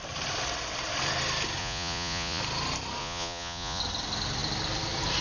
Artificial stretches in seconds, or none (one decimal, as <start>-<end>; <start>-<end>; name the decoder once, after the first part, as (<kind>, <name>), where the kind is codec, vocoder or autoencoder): 1.6-2.4 (vocoder, Vocos); 3.0-3.8